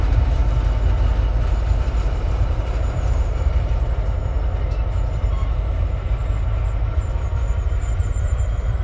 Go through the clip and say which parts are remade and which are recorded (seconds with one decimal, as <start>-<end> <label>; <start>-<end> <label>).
0.0-0.4 remade; 0.4-1.4 recorded; 1.4-4.2 remade; 4.2-5.5 recorded; 5.5-6.2 remade; 6.2-6.9 recorded; 6.9-8.8 remade